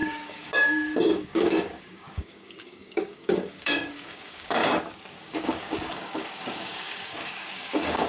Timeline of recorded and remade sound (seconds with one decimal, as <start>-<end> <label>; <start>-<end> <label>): 0.0-4.6 remade; 4.6-5.1 recorded; 5.1-8.1 remade